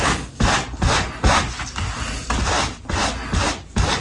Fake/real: real